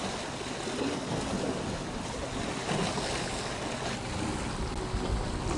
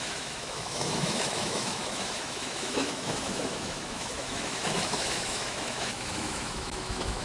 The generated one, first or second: second